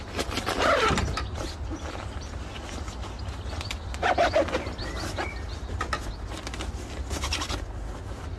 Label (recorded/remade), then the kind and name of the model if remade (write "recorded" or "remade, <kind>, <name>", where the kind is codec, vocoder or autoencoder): recorded